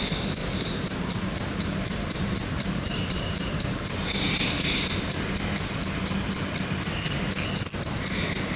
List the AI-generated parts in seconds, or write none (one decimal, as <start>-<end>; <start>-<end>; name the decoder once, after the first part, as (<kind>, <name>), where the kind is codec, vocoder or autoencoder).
0.4-5.4 (vocoder, BigVGAN v2)